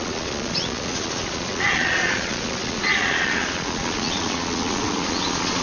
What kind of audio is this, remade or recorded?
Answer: remade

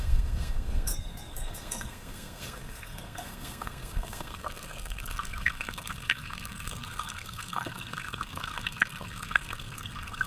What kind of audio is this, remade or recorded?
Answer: remade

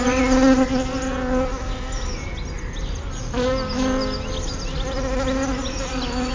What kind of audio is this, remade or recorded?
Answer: recorded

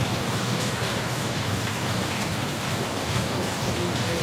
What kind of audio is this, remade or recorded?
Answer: remade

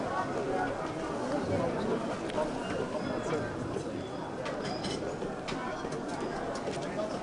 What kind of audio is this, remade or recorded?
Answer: recorded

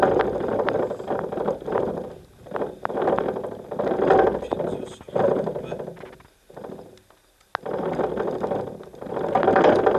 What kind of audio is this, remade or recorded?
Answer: recorded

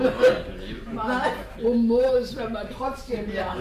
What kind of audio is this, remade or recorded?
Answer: recorded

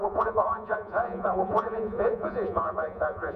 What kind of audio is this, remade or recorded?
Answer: remade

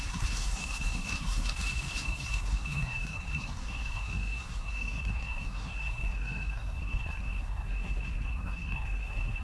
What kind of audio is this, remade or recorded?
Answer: remade